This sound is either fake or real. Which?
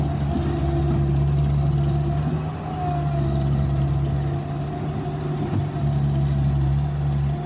real